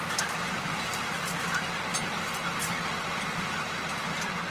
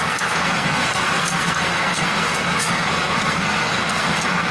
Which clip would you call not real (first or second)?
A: second